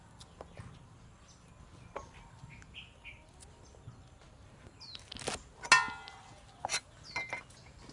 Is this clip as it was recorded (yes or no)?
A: yes